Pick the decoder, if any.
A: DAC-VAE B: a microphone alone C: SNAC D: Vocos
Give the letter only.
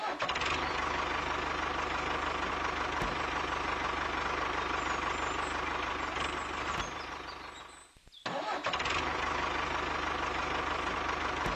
B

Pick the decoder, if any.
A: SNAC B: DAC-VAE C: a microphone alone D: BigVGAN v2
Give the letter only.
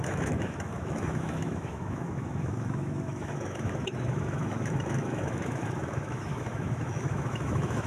B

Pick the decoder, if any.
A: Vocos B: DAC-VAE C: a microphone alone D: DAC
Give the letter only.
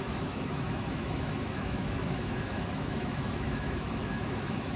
B